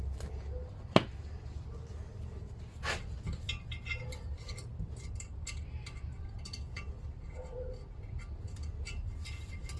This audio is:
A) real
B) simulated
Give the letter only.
B